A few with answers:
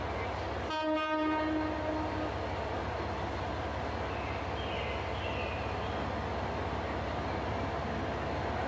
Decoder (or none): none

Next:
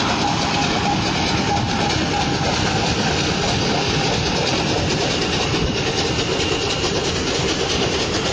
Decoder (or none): none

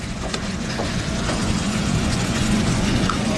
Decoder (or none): vocoder, Vocos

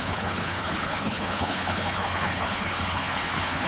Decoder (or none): codec, HILCodec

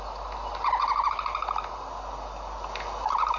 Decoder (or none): none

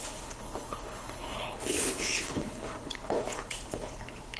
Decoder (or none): codec, HILCodec